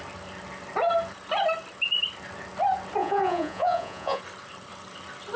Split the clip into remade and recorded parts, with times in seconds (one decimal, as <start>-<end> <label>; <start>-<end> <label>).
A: 0.0-3.0 recorded; 3.0-4.2 remade; 4.2-5.4 recorded

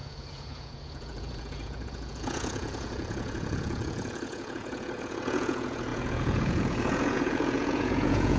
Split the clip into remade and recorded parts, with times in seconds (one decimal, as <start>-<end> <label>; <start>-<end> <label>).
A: 0.0-8.4 remade

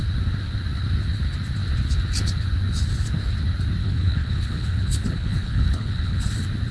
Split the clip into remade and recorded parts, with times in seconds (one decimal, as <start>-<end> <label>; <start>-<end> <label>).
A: 0.0-3.8 recorded; 3.8-6.2 remade; 6.2-6.7 recorded

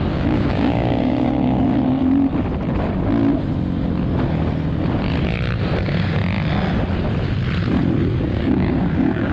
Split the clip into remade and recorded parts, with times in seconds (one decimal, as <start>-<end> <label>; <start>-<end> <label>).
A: 0.0-2.0 remade; 2.0-5.8 recorded; 5.8-6.2 remade; 6.2-8.2 recorded; 8.2-9.3 remade

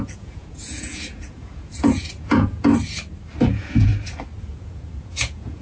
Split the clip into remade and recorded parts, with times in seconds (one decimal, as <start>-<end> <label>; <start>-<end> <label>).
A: 0.0-2.7 remade; 2.7-3.4 recorded; 3.4-3.9 remade; 3.9-4.4 recorded; 4.4-5.6 remade

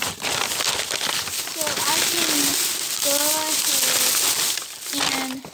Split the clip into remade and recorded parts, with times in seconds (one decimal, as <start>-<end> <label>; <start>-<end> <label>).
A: 0.0-5.5 recorded